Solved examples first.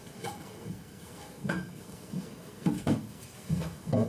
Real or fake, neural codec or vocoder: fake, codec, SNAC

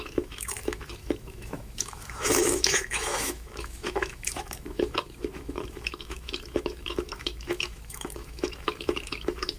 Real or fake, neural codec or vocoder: fake, autoencoder, DAC-VAE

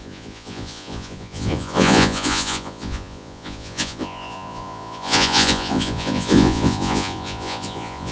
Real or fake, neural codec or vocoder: fake, vocoder, Vocos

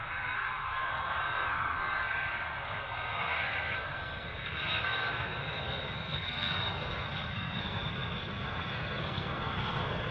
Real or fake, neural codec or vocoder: fake, codec, SNAC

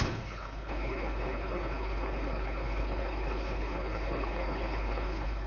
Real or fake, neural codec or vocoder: fake, codec, HILCodec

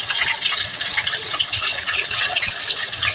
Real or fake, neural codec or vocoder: fake, vocoder, WaveNeXt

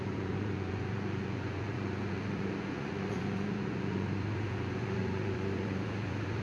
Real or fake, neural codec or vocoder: fake, vocoder, Vocos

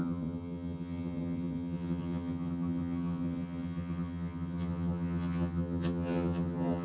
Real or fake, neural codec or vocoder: fake, vocoder, HiFi-GAN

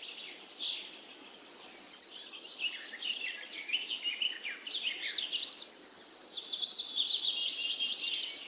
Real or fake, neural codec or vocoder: real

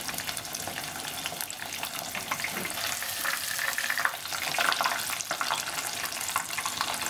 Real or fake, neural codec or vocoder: real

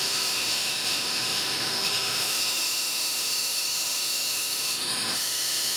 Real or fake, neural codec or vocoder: fake, autoencoder, DAC-VAE